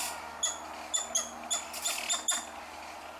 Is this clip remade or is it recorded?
recorded